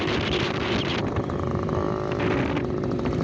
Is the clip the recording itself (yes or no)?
yes